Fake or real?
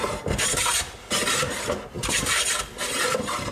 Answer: real